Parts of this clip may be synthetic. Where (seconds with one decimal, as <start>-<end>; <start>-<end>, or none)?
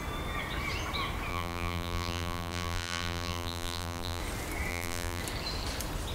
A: 1.3-4.2; 4.7-5.2